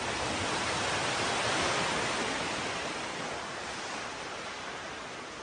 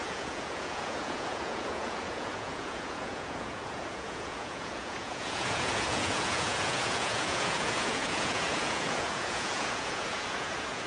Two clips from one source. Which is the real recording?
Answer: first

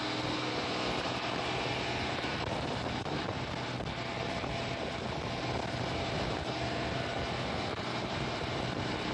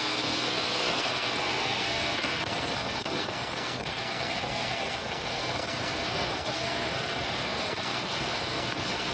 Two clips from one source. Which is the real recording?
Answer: first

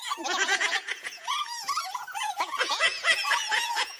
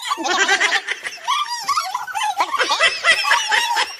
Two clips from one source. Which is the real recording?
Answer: second